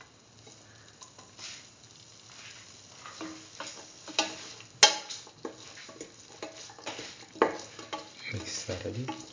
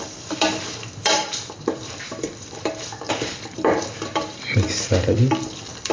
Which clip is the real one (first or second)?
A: first